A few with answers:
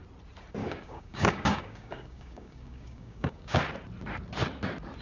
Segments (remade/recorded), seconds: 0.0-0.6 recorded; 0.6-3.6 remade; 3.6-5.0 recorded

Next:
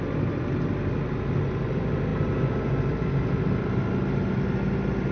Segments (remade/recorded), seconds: 0.0-5.1 recorded

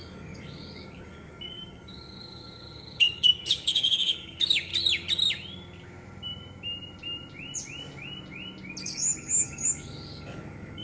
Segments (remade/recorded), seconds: 0.0-4.7 remade; 4.7-8.8 recorded; 8.8-10.8 remade

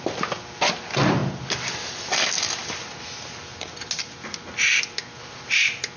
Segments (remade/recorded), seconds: 0.0-6.0 recorded

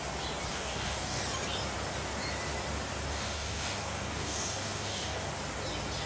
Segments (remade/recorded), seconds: 0.0-0.5 recorded; 0.5-1.2 remade; 1.2-3.1 recorded; 3.1-5.3 remade; 5.3-6.1 recorded

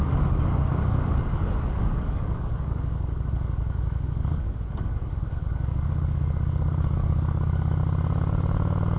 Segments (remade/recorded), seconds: 0.0-7.8 remade; 7.8-9.0 recorded

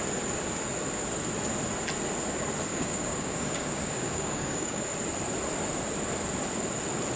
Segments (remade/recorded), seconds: 0.0-2.7 recorded; 2.7-4.8 remade; 4.8-7.2 recorded